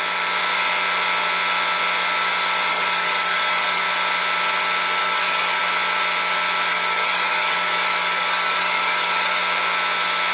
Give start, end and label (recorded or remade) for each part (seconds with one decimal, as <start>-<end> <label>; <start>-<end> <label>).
0.0-2.7 recorded; 2.7-3.8 remade; 3.8-5.0 recorded; 5.0-5.6 remade; 5.6-6.7 recorded; 6.7-9.4 remade; 9.4-10.3 recorded